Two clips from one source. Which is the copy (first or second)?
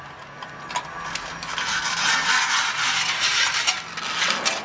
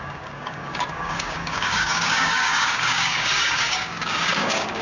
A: second